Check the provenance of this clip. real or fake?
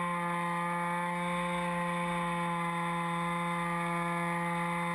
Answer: real